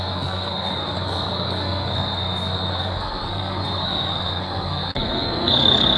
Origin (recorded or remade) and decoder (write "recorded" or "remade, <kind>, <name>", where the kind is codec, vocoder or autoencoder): remade, codec, SNAC